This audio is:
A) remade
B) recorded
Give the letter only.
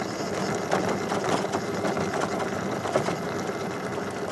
B